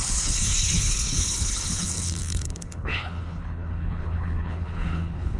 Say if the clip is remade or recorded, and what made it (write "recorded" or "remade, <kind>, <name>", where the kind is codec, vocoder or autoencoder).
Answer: remade, codec, HILCodec